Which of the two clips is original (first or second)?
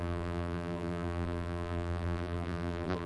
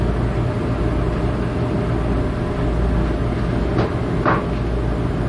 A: second